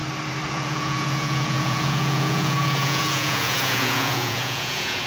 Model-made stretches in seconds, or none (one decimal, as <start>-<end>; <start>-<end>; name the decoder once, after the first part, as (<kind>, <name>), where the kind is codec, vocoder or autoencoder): 0.5-5.1 (vocoder, Vocos)